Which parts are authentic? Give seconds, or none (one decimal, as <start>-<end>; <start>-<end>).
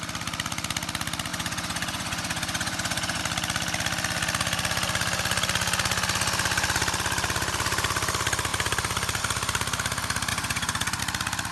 0.0-1.3; 3.2-10.3; 11.0-11.5